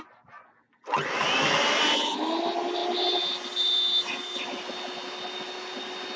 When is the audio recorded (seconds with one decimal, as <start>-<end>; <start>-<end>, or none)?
0.0-6.2